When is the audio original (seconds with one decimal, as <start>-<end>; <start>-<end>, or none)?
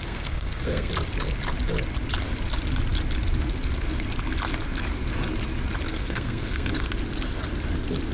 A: 0.9-5.9; 6.9-8.1